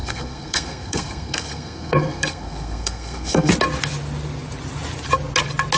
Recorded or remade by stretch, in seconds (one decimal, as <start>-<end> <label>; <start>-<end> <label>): 0.0-3.5 remade; 3.5-5.8 recorded